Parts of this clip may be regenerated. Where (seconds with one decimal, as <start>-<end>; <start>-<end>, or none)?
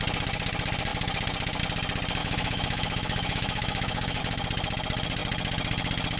2.2-4.2